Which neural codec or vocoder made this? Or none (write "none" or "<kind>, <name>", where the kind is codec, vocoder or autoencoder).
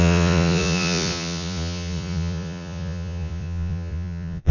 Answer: vocoder, Vocos